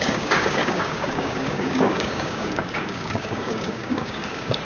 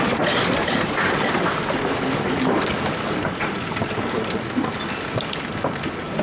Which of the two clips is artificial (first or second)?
first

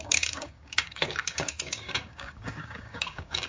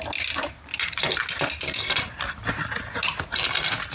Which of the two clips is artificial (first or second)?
first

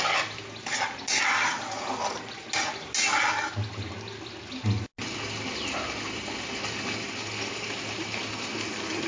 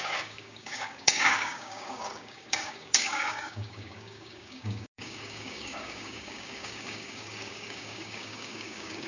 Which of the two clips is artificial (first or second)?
second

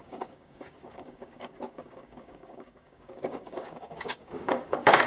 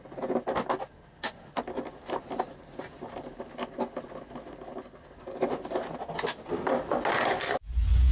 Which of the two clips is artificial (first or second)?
first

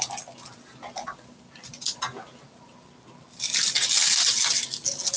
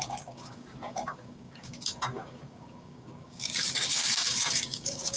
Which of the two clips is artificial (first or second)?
second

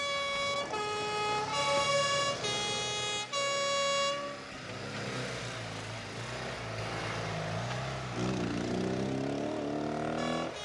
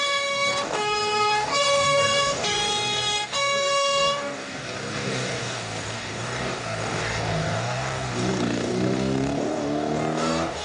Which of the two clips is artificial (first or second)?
second